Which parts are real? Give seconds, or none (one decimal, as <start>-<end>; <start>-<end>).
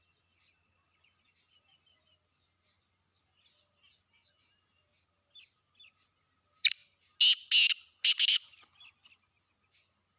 0.0-10.2